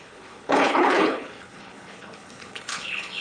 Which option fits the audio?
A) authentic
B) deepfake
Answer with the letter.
B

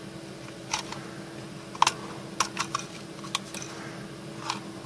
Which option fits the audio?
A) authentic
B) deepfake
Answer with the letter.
A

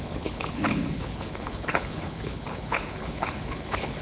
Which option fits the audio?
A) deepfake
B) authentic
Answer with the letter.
A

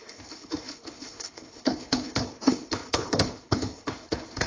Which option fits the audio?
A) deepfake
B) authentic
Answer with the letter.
A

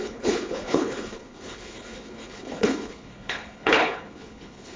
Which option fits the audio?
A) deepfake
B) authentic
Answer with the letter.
A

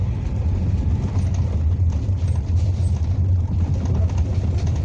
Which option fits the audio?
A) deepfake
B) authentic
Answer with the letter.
B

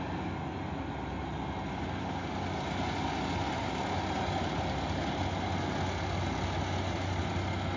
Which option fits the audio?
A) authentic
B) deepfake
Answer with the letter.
A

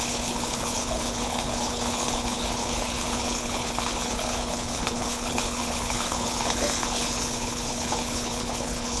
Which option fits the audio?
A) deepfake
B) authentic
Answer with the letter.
A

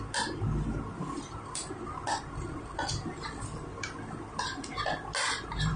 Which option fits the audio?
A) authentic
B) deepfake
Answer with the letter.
A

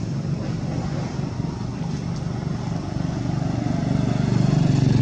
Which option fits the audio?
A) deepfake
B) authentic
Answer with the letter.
B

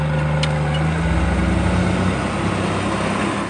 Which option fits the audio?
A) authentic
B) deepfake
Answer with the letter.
A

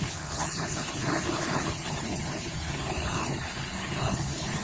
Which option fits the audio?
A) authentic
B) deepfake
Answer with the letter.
B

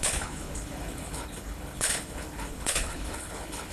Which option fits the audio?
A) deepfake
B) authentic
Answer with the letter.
A